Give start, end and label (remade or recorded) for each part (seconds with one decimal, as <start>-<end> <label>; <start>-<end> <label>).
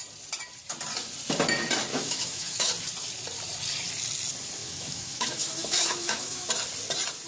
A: 0.0-1.9 recorded; 1.9-2.7 remade; 2.7-4.6 recorded; 4.6-6.5 remade; 6.5-7.3 recorded